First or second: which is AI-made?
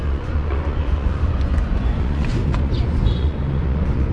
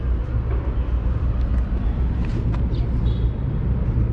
first